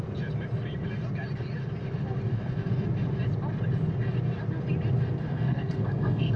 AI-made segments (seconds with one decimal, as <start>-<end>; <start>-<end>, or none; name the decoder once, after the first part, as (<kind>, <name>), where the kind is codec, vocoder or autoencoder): 5.3-6.4 (codec, SNAC)